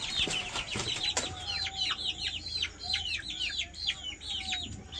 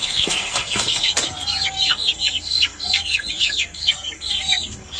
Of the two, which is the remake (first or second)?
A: second